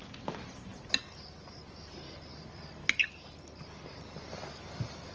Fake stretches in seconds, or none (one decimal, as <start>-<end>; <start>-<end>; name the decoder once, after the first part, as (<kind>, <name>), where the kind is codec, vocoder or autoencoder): none